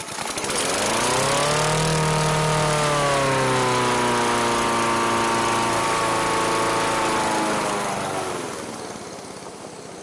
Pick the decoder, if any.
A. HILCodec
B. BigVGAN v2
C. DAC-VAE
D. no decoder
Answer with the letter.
D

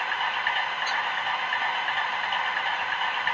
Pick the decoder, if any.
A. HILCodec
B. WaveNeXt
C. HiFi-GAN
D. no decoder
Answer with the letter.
D